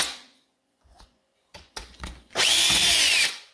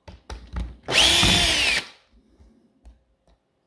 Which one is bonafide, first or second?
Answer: second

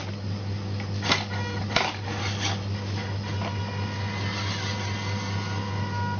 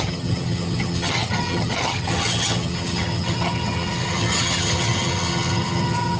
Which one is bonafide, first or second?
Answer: first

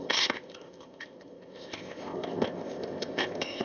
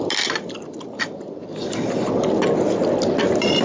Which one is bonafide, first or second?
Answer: second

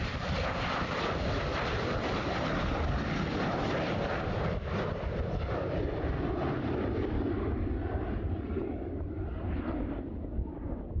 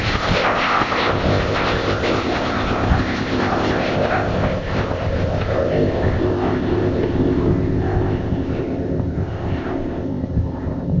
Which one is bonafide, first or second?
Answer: first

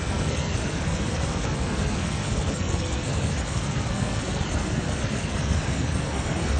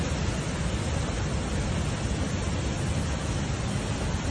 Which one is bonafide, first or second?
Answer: second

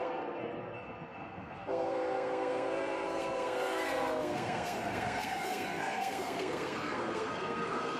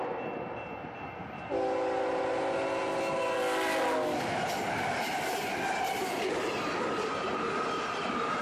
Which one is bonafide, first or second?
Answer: second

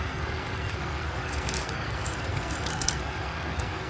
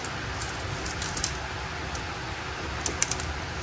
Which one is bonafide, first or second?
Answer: second